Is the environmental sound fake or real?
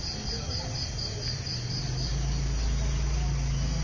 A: real